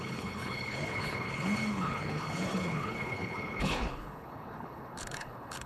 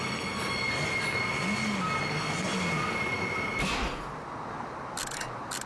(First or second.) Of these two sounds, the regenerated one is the first